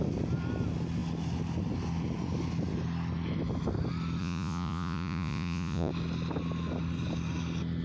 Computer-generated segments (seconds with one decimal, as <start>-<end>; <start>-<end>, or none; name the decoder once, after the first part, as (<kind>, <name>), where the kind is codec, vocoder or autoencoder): 4.2-5.9 (vocoder, Vocos)